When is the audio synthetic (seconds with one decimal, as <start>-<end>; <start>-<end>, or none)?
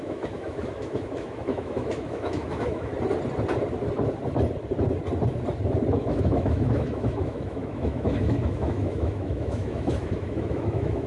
0.0-2.9; 5.9-11.1